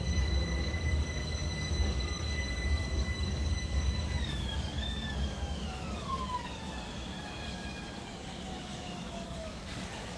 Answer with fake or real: fake